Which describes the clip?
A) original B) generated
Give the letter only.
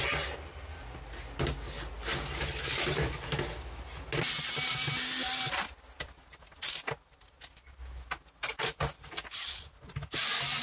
A